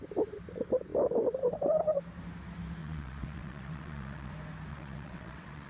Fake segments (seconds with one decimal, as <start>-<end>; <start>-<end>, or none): 2.8-4.3; 4.7-5.7